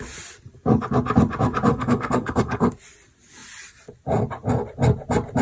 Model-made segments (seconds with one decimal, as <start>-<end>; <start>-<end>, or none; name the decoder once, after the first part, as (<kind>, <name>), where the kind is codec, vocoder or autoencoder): 1.7-2.7 (codec, SNAC)